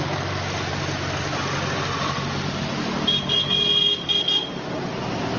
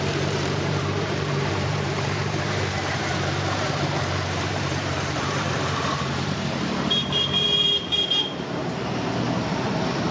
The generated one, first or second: second